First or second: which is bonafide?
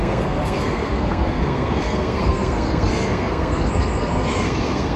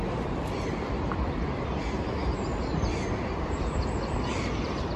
second